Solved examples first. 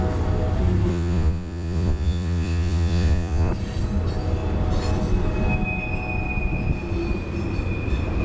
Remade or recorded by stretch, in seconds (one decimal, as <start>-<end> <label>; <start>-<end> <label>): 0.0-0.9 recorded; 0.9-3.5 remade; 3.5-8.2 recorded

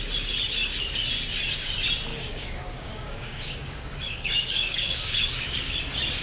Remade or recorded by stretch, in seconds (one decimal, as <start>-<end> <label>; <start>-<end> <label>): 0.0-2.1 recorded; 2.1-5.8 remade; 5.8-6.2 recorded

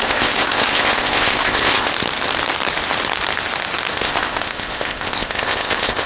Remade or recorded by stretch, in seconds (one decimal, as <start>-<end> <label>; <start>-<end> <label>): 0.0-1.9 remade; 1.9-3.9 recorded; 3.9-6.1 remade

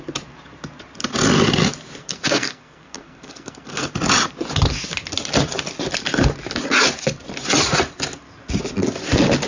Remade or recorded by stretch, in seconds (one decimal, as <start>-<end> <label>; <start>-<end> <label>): 0.0-2.0 recorded; 2.0-3.9 remade; 3.9-9.5 recorded